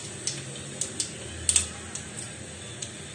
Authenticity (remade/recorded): recorded